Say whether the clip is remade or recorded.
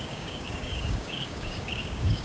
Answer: remade